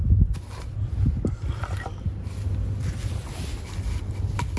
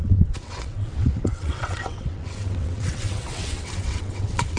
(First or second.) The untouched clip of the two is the first